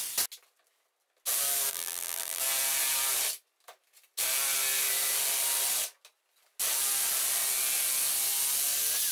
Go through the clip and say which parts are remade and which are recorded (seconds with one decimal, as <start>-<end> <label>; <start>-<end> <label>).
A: 0.0-1.7 recorded; 1.7-2.4 remade; 2.4-9.1 recorded